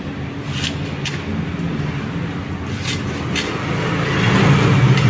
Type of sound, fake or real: real